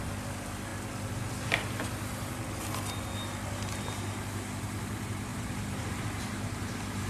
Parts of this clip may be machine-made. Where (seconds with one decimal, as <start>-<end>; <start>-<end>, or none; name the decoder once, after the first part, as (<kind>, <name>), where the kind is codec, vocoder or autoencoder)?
5.3-7.1 (vocoder, BigVGAN v2)